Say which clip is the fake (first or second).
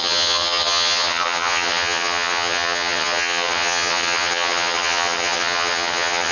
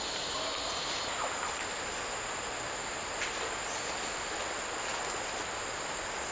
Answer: first